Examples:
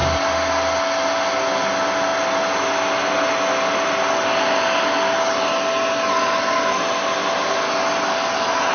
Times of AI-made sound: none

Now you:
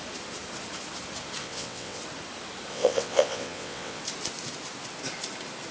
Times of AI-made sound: 1.4-2.0 (vocoder, WaveNeXt); 2.7-4.0